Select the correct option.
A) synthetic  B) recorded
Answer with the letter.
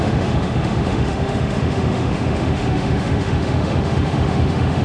A